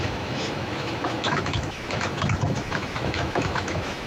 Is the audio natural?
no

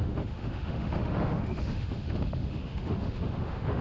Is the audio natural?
no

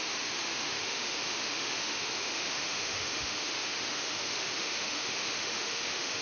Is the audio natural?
no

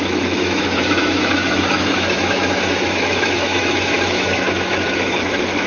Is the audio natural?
no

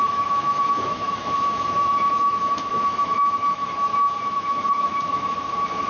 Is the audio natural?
no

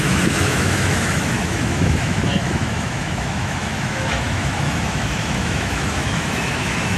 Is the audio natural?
no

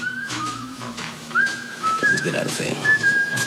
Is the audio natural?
no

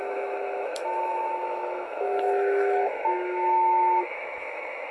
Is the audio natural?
no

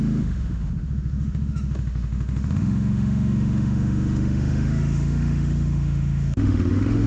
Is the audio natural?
no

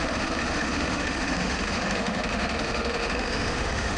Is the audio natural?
no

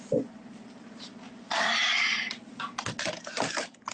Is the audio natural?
yes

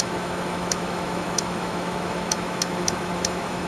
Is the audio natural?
no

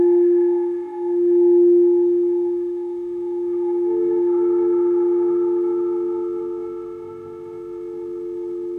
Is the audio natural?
no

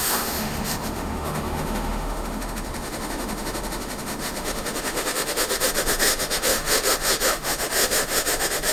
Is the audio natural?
no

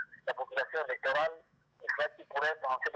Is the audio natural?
no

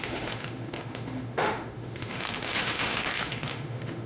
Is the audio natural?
no